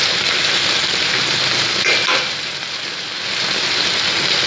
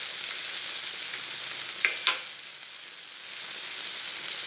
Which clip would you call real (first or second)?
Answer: second